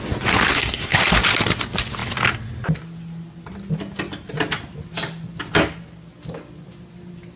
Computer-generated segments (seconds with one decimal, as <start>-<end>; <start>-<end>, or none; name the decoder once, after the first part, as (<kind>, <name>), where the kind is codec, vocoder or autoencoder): 0.5-1.0 (codec, SNAC)